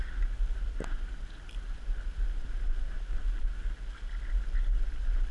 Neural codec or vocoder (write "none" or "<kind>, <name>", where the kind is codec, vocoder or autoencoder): none